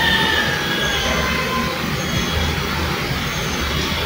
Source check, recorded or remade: recorded